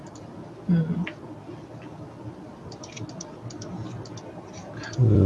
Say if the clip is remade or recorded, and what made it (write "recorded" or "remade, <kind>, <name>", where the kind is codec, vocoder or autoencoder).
recorded